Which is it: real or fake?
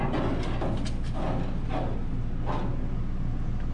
real